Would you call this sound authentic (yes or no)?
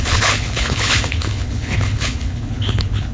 no